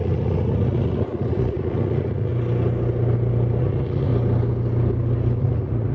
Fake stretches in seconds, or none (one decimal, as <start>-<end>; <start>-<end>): 0.0-2.3; 3.6-4.1; 5.4-5.9

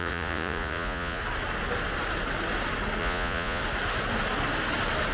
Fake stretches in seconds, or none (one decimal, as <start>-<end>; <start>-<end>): 0.0-1.2; 3.0-3.6

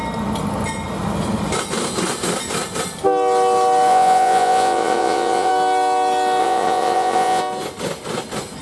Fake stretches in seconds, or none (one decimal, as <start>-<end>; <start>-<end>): 3.9-5.5; 6.4-7.4

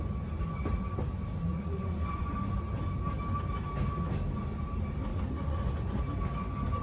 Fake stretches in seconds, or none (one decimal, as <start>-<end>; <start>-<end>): 1.5-2.3; 5.1-6.0